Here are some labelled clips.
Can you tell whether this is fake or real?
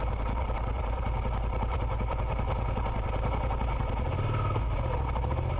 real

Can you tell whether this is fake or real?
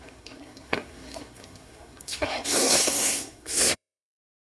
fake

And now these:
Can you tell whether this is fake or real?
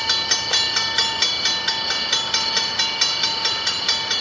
real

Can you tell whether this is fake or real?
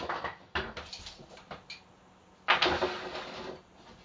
real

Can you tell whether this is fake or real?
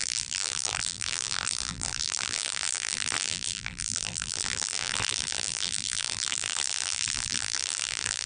fake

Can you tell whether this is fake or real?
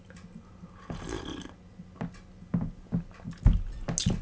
real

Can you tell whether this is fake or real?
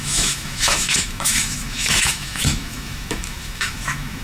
fake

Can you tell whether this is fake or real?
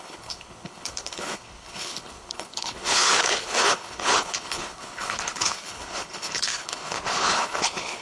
fake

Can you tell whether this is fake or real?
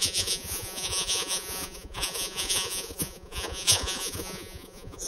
fake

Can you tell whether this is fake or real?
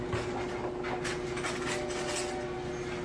real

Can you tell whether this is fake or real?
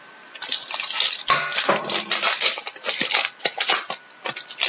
real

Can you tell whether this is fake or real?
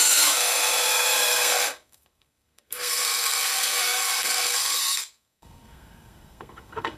fake